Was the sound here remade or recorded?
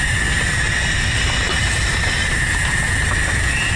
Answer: recorded